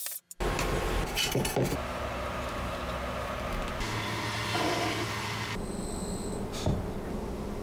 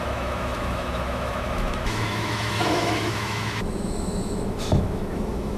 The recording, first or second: first